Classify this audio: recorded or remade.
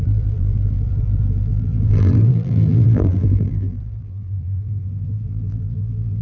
remade